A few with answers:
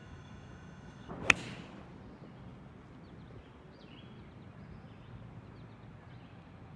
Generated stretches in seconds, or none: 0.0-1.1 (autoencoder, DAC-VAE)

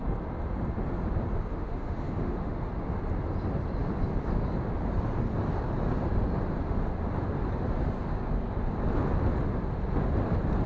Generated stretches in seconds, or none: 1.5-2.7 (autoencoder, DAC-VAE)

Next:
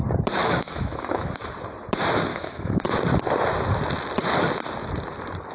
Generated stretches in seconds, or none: 0.4-1.3 (autoencoder, DAC-VAE); 2.3-2.9

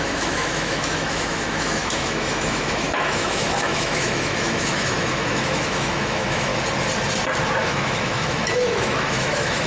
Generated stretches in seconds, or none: 0.0-6.5 (autoencoder, DAC-VAE); 7.6-9.7

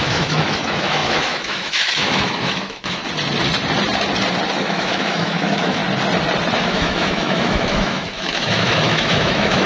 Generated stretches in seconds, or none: 0.0-3.0 (autoencoder, DAC-VAE); 4.6-5.8; 6.6-9.7